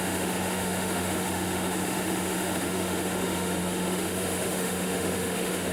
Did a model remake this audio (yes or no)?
yes